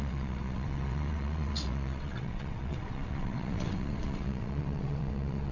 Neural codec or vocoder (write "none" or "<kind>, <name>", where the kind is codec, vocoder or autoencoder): vocoder, WaveNeXt